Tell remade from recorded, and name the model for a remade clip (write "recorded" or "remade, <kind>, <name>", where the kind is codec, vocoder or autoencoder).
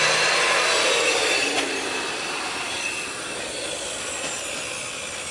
recorded